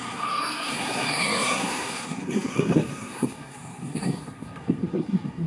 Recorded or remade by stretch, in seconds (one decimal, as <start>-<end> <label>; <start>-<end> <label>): 0.0-5.5 remade